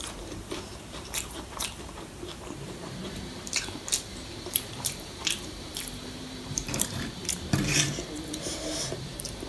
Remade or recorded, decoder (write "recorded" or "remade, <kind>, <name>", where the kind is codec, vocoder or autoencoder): remade, vocoder, BigVGAN v2